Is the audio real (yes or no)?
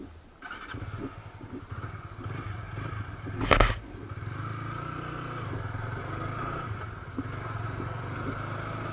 yes